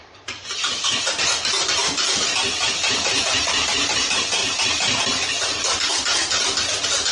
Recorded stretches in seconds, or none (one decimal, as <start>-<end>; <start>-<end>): 0.0-7.1